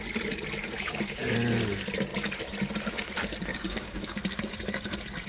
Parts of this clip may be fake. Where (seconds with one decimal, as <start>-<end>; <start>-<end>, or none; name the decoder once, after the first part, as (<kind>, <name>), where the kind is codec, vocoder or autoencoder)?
0.6-1.3 (codec, DAC); 3.5-4.2